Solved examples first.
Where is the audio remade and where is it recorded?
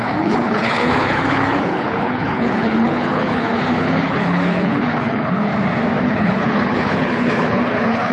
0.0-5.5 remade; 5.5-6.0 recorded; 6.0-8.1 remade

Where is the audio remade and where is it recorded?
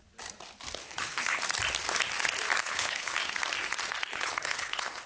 0.0-0.8 recorded; 0.8-1.4 remade; 1.4-2.6 recorded; 2.6-3.2 remade; 3.2-4.1 recorded; 4.1-5.1 remade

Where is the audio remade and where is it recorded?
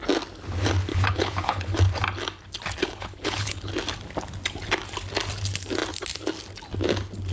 0.0-0.9 recorded; 0.9-1.8 remade; 1.8-2.8 recorded; 2.8-3.7 remade; 3.7-7.3 recorded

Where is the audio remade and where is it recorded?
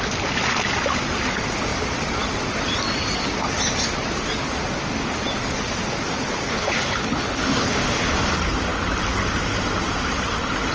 0.0-6.5 recorded; 6.5-8.2 remade; 8.2-10.7 recorded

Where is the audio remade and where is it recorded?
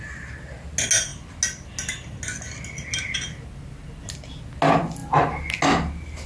0.0-6.3 recorded